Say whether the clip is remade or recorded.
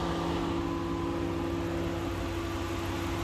recorded